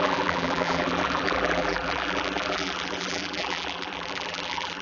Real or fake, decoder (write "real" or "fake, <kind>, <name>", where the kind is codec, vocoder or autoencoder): fake, vocoder, BigVGAN v2